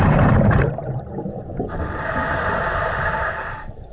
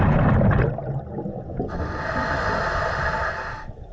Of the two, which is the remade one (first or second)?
first